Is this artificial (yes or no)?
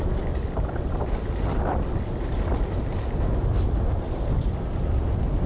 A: no